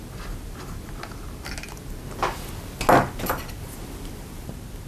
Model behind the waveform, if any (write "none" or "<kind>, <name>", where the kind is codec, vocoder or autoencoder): none